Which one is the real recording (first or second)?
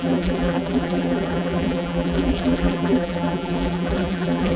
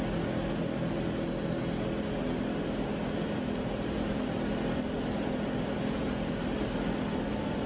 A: second